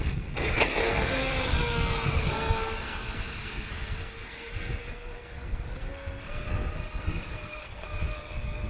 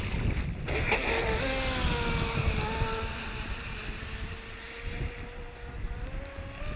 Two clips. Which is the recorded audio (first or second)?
second